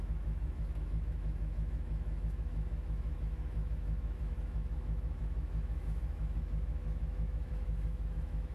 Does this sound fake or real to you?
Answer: fake